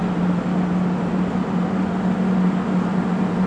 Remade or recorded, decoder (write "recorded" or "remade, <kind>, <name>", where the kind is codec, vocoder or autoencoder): recorded